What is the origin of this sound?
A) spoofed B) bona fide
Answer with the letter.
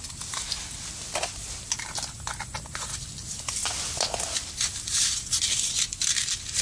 B